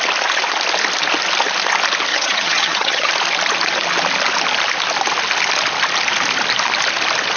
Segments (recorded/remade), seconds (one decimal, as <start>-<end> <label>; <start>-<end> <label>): 0.0-2.1 recorded; 2.1-3.1 remade; 3.1-7.4 recorded

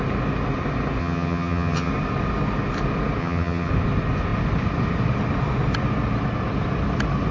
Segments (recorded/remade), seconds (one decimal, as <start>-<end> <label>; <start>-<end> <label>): 0.0-1.0 recorded; 1.0-1.9 remade; 1.9-3.2 recorded; 3.2-3.7 remade; 3.7-7.3 recorded